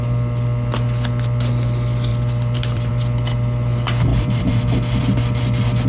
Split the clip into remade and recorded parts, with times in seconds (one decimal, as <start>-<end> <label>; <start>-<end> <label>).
0.0-2.1 recorded; 2.1-2.9 remade; 2.9-4.1 recorded; 4.1-5.0 remade; 5.0-5.9 recorded